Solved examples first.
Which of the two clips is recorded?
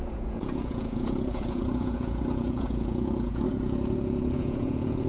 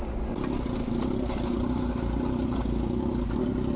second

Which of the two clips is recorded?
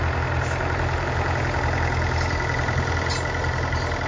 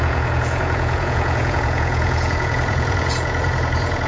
first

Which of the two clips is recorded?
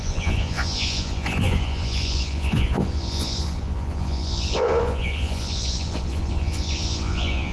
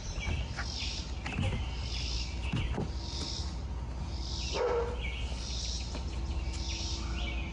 second